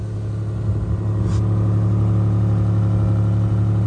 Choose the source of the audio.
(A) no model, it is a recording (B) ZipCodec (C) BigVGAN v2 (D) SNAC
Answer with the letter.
A